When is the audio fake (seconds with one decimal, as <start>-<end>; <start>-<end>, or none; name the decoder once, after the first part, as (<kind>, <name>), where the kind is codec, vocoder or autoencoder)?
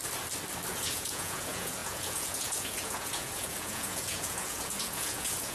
0.7-5.5 (vocoder, Vocos)